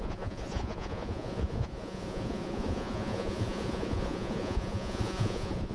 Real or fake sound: fake